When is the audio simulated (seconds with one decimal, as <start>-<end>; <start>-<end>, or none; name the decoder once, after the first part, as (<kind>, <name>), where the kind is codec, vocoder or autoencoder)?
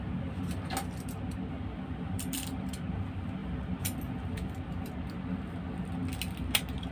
1.6-2.7 (vocoder, BigVGAN v2); 3.4-4.9